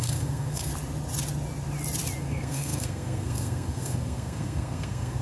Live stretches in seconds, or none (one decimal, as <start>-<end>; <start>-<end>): 0.7-2.2